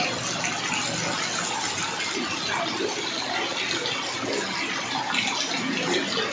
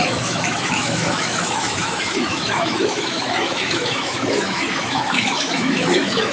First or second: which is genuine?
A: first